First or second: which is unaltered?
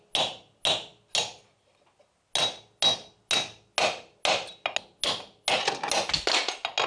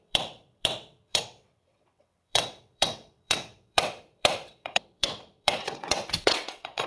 first